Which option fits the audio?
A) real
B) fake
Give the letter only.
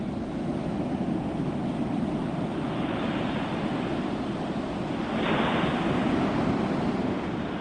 A